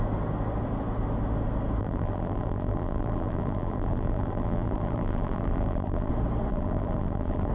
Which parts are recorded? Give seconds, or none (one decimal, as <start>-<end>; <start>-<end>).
0.0-1.8; 6.1-6.5